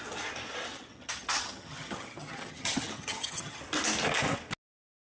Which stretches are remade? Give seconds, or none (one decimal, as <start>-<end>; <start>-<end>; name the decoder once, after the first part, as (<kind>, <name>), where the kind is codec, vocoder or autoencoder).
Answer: 0.7-3.6 (vocoder, HiFi-GAN)